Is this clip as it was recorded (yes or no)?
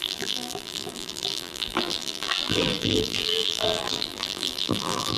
no